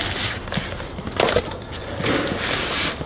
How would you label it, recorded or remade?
recorded